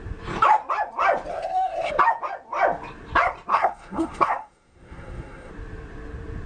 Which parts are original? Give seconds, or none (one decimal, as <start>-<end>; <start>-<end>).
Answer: 0.0-1.3; 1.9-3.5; 5.5-6.5

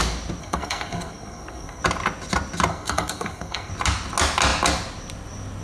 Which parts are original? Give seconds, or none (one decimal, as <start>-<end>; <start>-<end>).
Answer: 0.0-0.4; 1.8-2.7; 3.7-5.6

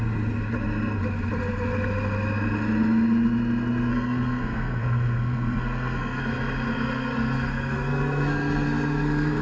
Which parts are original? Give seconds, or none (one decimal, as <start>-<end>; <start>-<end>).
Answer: 0.0-3.9; 6.2-6.7

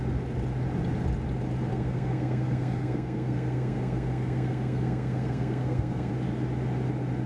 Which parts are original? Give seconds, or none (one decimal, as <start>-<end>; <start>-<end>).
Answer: 0.0-1.7; 6.1-7.3

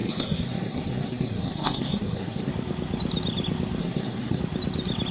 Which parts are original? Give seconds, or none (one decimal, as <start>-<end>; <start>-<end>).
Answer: 2.5-3.8; 4.4-5.1

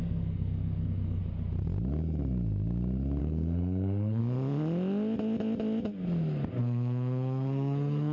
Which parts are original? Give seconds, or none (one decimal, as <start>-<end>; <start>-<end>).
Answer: 1.2-3.2; 4.2-6.6

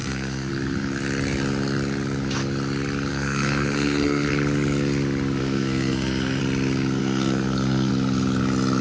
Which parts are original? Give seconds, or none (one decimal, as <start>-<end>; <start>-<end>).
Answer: 0.5-3.1; 4.3-5.4; 6.4-7.0; 7.9-8.8